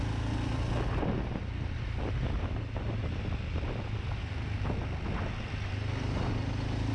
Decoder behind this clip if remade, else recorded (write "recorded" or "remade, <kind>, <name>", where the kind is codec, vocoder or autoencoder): recorded